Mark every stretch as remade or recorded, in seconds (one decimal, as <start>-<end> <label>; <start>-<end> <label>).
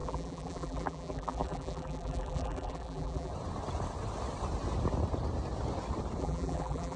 0.0-3.3 remade; 3.3-6.2 recorded; 6.2-7.0 remade